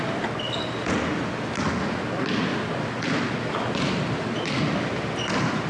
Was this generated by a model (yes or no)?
no